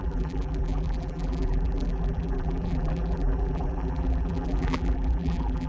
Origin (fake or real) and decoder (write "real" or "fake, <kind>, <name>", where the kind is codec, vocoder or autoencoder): fake, vocoder, BigVGAN v2